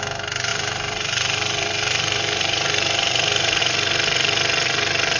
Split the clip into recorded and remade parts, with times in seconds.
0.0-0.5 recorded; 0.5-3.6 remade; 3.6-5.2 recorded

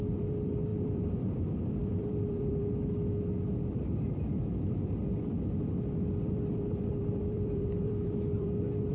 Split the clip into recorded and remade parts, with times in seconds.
0.0-8.9 remade

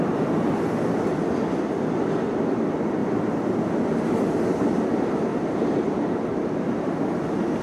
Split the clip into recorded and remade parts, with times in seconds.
0.0-5.3 recorded; 5.3-6.6 remade; 6.6-7.6 recorded

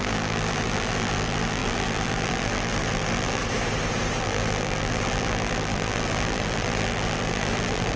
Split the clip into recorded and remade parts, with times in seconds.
0.0-3.4 remade; 3.4-4.2 recorded; 4.2-8.0 remade

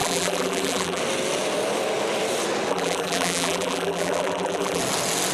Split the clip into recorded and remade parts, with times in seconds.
0.0-1.0 remade; 1.0-2.7 recorded; 2.7-4.8 remade; 4.8-5.3 recorded